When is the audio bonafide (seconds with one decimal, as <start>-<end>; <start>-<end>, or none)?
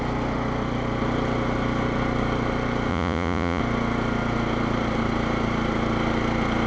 0.0-2.9; 3.6-6.7